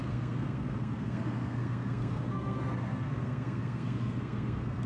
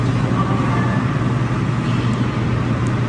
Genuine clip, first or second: second